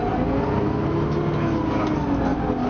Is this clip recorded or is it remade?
recorded